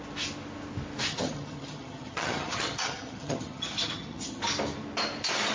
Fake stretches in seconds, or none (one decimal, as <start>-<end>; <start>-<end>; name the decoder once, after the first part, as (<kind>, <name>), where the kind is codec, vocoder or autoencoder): 1.1-4.4 (vocoder, HiFi-GAN)